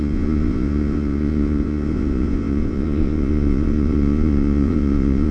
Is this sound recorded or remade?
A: remade